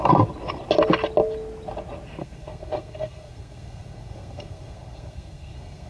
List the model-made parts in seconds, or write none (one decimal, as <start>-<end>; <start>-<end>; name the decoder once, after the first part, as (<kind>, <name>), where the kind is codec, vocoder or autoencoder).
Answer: 2.2-5.9 (codec, SNAC)